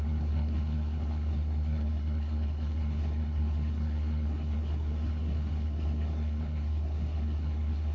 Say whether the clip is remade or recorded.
remade